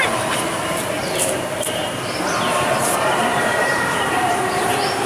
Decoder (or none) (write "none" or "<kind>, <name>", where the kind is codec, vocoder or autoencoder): vocoder, BigVGAN v2